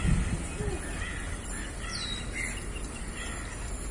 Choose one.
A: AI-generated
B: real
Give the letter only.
B